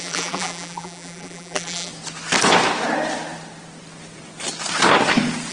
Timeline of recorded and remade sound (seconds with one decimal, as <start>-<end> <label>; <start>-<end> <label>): 0.0-1.9 remade; 1.9-5.5 recorded